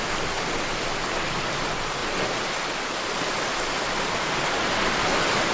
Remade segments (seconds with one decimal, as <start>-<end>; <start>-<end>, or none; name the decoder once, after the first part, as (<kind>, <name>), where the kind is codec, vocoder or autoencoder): none